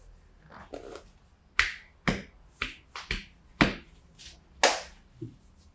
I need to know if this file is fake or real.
real